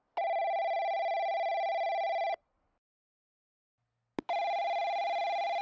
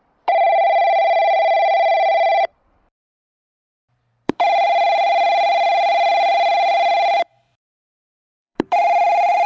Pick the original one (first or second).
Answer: first